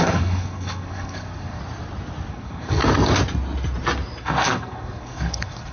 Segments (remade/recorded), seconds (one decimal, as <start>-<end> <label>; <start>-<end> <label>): 0.0-1.6 remade; 1.6-2.3 recorded; 2.3-2.8 remade; 2.8-4.2 recorded; 4.2-5.7 remade